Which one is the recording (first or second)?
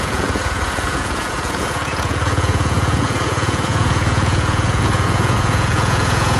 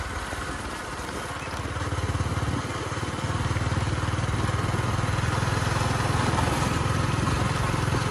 second